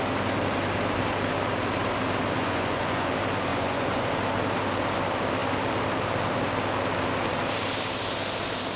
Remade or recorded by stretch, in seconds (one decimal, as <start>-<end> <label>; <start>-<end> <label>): 0.0-2.4 recorded; 2.4-3.1 remade; 3.1-3.5 recorded; 3.5-4.1 remade; 4.1-8.8 recorded